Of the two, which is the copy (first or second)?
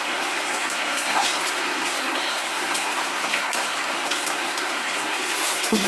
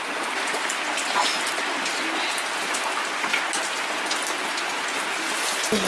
first